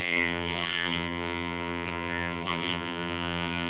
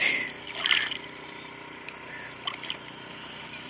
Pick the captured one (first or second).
second